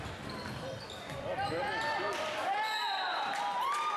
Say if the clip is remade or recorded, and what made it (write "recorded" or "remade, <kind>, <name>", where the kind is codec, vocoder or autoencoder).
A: recorded